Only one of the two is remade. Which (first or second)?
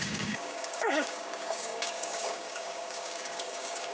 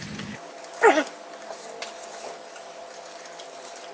first